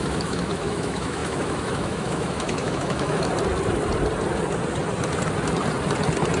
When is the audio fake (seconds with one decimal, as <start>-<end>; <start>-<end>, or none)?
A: 0.0-3.3

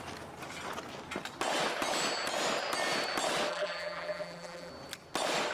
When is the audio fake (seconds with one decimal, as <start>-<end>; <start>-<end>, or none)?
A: 3.5-4.7

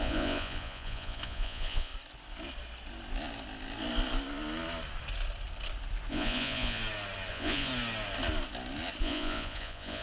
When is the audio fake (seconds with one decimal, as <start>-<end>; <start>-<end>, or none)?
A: 0.0-1.9; 6.1-6.8; 7.3-7.7; 9.0-10.0

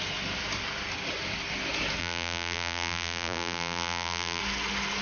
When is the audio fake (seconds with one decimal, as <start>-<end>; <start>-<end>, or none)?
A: 2.0-4.4

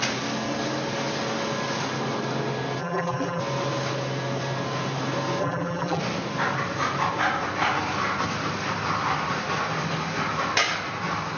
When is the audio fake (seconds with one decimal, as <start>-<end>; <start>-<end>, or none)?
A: 2.8-3.4; 5.4-6.0

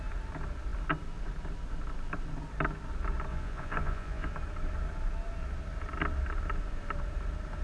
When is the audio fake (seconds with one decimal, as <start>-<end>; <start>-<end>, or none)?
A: 3.3-4.3

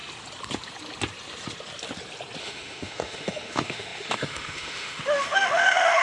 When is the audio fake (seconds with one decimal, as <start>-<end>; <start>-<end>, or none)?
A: 2.4-6.0